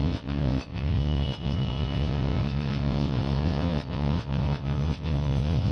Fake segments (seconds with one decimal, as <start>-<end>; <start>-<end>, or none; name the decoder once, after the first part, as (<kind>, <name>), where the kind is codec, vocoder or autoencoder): 0.0-5.7 (vocoder, WaveNeXt)